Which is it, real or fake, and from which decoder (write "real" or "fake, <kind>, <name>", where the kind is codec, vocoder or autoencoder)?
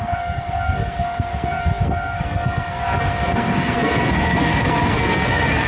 fake, codec, SNAC